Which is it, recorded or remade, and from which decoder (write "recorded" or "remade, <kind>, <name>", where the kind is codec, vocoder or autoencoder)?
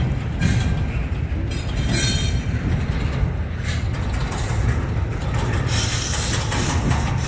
recorded